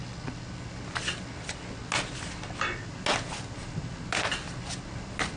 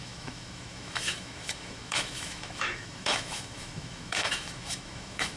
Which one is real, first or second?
first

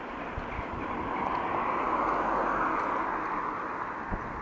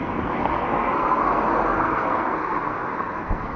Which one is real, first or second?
first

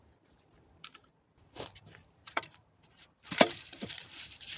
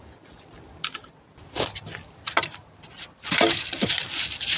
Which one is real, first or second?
second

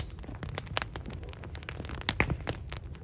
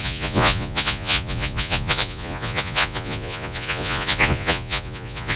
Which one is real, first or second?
first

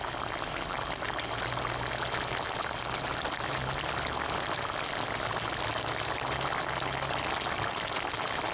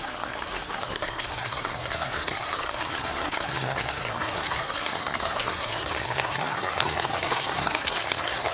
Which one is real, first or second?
first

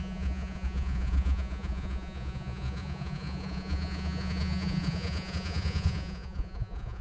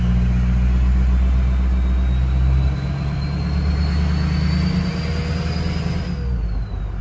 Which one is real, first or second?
second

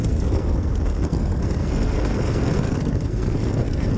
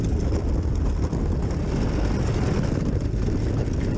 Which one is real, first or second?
second